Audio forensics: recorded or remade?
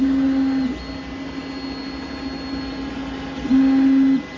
recorded